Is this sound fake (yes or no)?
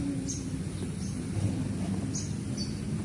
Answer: no